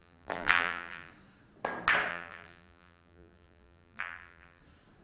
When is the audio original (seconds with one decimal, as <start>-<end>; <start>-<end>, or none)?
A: 1.1-2.1; 4.6-5.0